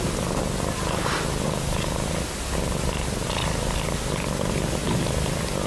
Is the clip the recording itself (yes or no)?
yes